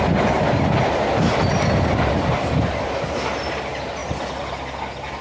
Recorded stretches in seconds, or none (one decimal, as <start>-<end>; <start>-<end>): 0.0-5.2